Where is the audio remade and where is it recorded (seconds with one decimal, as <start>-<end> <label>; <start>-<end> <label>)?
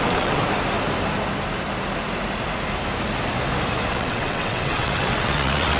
0.0-0.4 remade; 0.4-3.9 recorded; 3.9-5.8 remade